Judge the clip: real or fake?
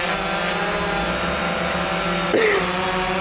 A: real